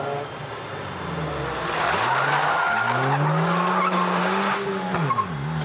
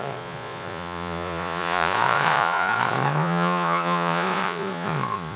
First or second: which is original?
first